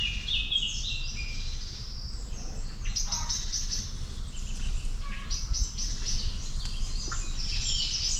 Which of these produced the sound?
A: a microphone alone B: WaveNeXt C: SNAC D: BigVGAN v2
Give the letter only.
A